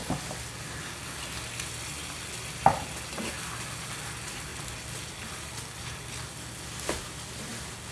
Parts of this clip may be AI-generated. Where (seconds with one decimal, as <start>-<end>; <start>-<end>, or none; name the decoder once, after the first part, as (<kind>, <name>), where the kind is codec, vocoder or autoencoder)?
none

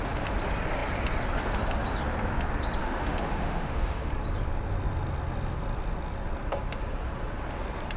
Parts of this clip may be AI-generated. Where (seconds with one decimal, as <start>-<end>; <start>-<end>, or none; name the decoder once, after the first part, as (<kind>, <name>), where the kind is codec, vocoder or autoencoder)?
2.8-4.1 (autoencoder, DAC-VAE)

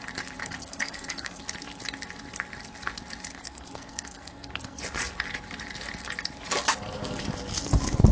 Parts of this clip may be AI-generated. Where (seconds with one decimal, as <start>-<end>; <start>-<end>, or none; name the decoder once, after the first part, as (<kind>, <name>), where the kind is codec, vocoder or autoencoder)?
0.4-1.4 (codec, SNAC); 3.3-4.8